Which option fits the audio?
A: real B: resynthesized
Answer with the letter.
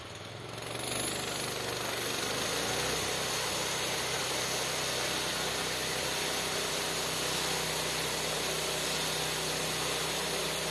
A